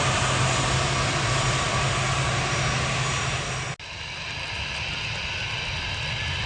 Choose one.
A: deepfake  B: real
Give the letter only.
B